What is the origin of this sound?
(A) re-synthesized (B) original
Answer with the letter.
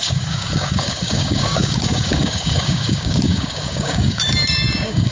A